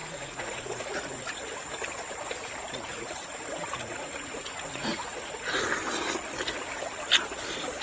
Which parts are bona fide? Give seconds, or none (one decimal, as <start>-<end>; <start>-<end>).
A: 1.4-2.9; 5.7-7.8